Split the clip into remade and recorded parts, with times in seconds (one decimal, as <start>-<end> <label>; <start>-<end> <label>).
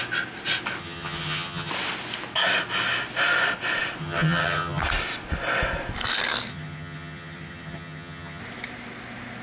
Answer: 0.0-0.8 recorded; 0.8-1.7 remade; 1.7-4.0 recorded; 4.0-4.8 remade; 4.8-6.5 recorded; 6.5-8.4 remade; 8.4-9.4 recorded